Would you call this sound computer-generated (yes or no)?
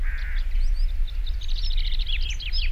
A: no